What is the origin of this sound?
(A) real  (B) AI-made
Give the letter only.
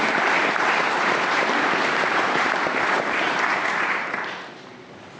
B